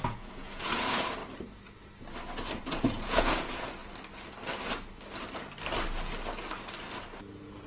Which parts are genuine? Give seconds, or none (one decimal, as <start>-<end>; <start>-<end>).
1.2-2.6; 3.8-7.7